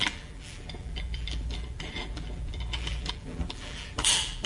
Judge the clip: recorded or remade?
remade